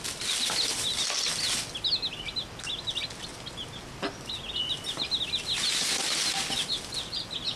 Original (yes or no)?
yes